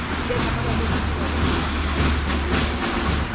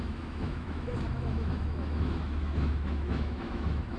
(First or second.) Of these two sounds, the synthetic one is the second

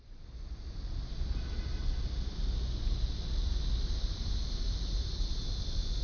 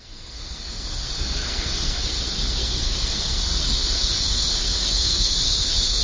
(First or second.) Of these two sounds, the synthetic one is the second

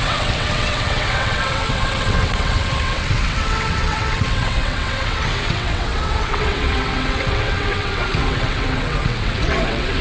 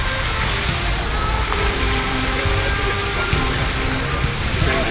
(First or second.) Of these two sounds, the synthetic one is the first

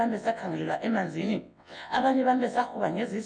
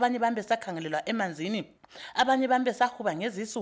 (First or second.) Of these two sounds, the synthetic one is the first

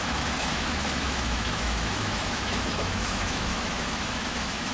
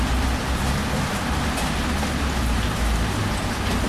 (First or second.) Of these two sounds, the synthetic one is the first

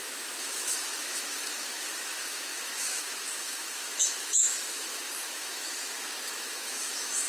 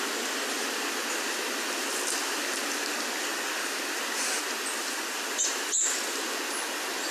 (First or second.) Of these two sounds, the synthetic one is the first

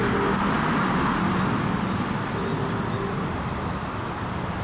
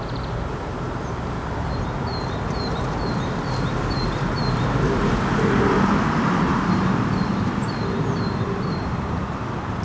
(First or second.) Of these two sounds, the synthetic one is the second